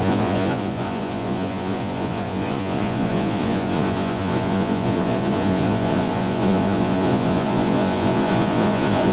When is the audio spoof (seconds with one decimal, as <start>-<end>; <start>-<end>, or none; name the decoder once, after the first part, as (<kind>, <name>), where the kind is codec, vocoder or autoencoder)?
0.0-9.1 (vocoder, Vocos)